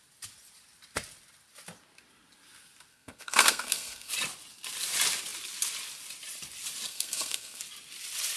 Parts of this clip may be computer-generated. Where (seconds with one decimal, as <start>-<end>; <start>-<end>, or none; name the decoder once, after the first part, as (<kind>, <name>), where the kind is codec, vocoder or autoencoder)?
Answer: 2.9-4.1 (codec, SNAC); 6.9-7.6